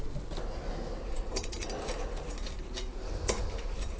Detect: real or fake real